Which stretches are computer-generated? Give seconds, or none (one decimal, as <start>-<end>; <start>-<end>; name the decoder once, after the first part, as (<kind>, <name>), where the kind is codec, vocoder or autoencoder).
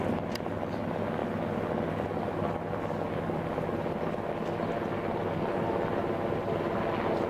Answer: none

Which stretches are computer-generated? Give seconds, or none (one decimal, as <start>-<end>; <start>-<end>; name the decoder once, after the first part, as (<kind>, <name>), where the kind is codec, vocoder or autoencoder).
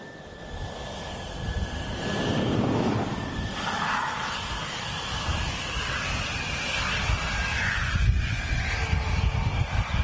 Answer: 7.5-8.5 (vocoder, Vocos)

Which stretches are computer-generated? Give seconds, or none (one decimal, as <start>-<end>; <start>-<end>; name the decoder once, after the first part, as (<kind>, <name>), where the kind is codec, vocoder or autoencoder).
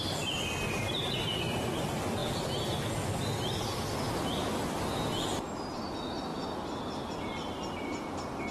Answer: none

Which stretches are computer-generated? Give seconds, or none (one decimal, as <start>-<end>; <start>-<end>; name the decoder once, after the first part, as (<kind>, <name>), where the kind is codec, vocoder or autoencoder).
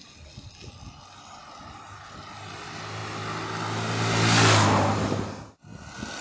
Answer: none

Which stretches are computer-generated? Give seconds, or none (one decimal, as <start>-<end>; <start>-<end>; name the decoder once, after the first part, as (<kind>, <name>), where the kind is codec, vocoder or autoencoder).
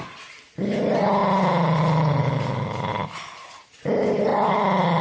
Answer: none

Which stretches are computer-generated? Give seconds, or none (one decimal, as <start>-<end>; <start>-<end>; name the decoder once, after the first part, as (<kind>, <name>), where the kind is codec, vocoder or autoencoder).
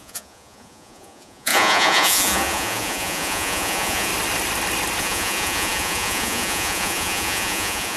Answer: 0.0-4.1 (vocoder, Vocos); 5.0-8.0